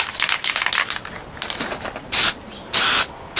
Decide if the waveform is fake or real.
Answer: real